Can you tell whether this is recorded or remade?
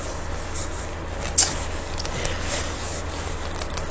recorded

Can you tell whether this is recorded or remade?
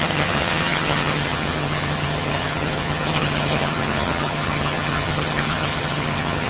remade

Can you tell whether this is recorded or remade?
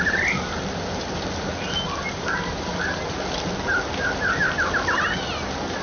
recorded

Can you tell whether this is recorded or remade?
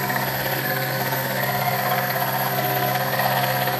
remade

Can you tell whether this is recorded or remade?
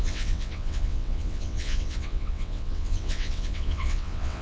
remade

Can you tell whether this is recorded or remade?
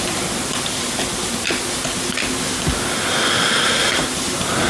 recorded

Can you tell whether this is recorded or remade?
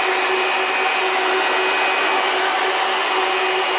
recorded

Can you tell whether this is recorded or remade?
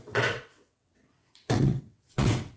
remade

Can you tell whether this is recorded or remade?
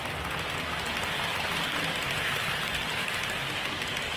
recorded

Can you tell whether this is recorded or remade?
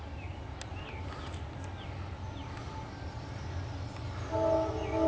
recorded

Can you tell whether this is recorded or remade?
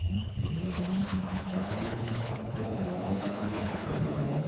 remade